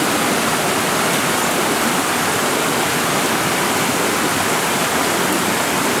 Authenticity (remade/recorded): recorded